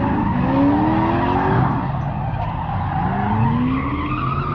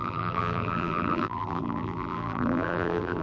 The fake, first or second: second